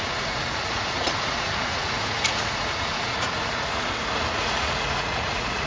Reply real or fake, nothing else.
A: fake